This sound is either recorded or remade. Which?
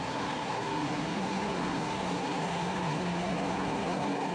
remade